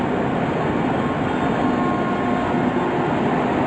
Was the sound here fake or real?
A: real